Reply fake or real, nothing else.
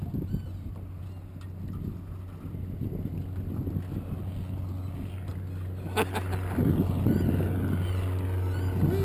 real